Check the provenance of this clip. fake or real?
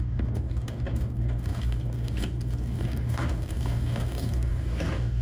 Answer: fake